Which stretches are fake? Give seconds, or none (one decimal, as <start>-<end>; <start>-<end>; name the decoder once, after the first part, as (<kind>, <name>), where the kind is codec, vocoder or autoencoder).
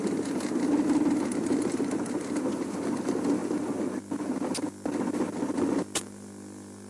none